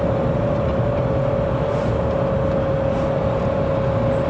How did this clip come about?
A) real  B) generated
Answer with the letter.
A